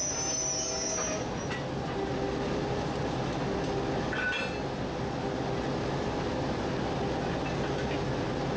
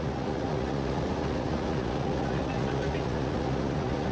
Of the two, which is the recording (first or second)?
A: first